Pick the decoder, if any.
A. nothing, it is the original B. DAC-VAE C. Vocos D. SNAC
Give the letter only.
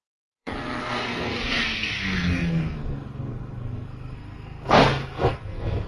D